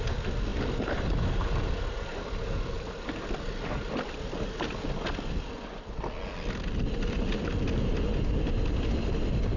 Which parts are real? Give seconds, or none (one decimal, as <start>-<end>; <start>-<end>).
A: 0.0-9.6